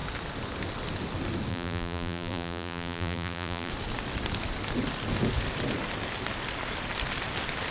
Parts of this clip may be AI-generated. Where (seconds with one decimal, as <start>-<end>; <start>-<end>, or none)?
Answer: 1.5-3.7